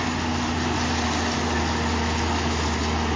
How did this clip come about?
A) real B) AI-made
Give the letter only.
A